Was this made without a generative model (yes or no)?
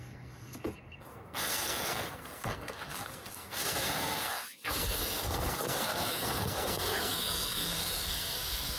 no